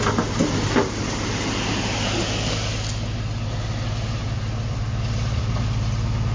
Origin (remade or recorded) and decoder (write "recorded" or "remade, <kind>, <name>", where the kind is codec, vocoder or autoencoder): remade, vocoder, BigVGAN v2